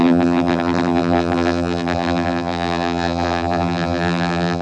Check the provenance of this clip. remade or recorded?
remade